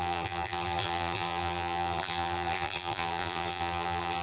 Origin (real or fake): fake